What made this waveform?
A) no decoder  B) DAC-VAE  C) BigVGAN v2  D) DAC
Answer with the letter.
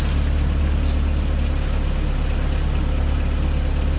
A